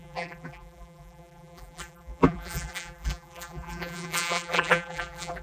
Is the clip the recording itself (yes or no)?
no